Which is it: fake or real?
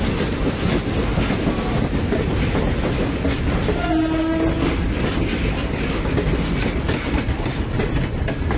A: real